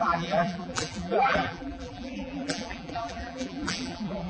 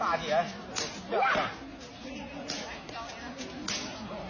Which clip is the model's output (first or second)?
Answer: first